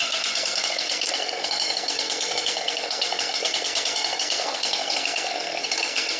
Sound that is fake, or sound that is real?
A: fake